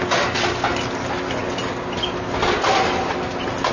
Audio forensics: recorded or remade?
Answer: recorded